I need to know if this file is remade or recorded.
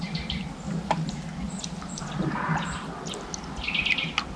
recorded